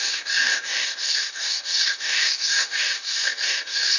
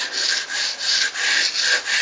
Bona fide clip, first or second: second